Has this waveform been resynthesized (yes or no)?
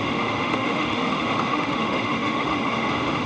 yes